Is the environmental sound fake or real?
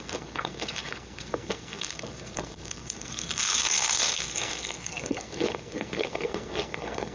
fake